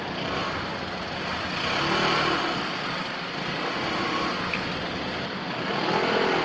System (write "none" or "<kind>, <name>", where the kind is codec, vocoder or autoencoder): none